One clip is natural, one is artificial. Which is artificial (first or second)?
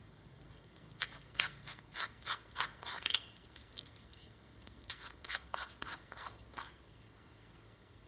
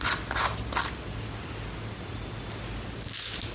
first